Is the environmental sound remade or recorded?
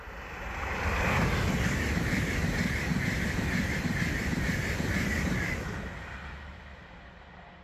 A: recorded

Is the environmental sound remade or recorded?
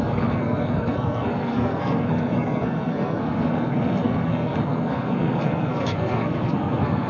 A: remade